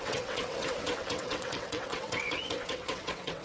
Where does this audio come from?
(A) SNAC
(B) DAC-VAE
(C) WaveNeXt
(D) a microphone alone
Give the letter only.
C